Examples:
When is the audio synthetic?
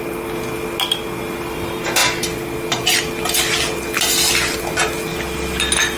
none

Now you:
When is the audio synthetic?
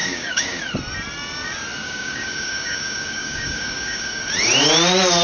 0.0-0.6 (codec, DAC); 1.8-4.2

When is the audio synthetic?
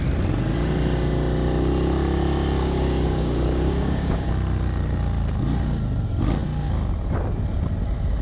2.6-4.3 (codec, DAC)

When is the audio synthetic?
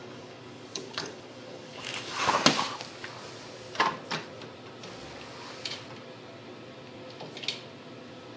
0.0-2.3 (codec, DAC)